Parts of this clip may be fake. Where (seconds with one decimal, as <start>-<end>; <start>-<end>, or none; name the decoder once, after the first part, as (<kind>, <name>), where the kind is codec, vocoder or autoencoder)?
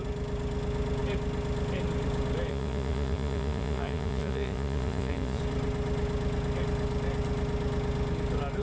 2.5-5.4 (vocoder, Vocos)